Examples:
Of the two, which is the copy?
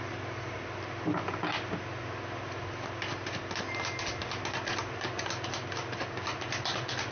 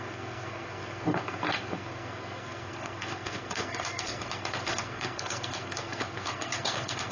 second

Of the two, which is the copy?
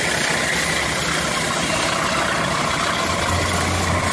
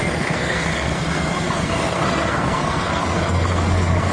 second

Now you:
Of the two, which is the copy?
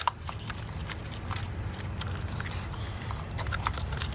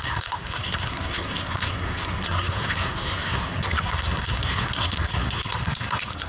second